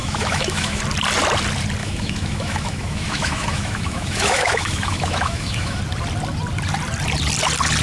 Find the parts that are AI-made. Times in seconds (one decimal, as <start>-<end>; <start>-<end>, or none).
0.0-0.8; 1.8-5.8